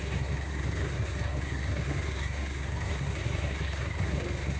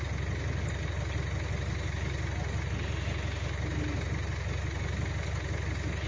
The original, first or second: second